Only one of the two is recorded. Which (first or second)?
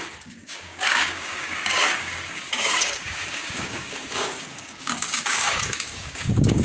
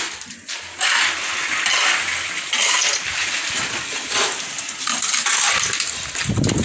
second